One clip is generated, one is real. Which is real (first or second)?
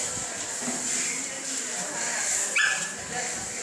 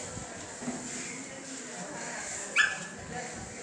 second